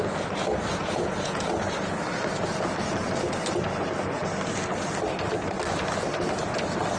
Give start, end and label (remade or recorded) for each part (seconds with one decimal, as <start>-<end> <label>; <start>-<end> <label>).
0.0-0.7 recorded; 0.7-1.4 remade; 1.4-7.0 recorded